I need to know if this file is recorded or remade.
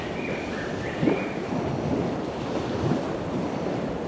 recorded